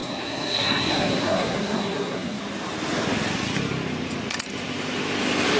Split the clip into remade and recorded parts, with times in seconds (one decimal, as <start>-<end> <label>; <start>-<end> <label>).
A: 0.0-2.4 remade; 2.4-5.6 recorded

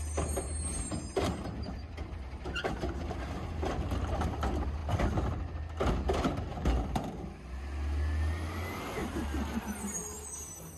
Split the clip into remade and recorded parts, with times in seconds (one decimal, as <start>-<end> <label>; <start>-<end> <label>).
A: 0.0-6.5 recorded; 6.5-7.3 remade; 7.3-9.0 recorded; 9.0-9.6 remade; 9.6-10.8 recorded

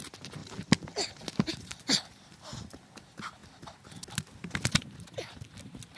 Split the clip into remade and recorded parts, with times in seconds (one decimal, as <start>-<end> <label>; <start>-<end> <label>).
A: 0.0-6.0 recorded

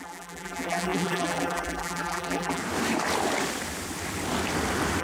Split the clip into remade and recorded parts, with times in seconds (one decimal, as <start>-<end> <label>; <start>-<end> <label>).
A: 0.0-2.6 remade; 2.6-5.0 recorded

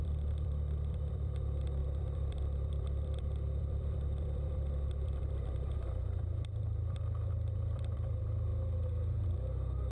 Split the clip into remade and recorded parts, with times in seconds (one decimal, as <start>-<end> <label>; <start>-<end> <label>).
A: 0.0-8.5 remade; 8.5-9.1 recorded; 9.1-9.9 remade

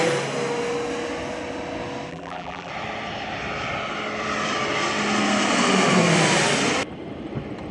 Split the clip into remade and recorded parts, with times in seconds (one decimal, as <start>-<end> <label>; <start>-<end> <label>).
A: 0.0-2.1 recorded; 2.1-2.7 remade; 2.7-7.7 recorded

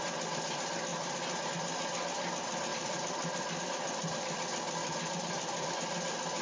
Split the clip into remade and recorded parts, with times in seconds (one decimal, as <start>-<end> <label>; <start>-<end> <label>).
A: 0.0-2.7 recorded; 2.7-3.6 remade; 3.6-4.8 recorded; 4.8-5.7 remade; 5.7-6.4 recorded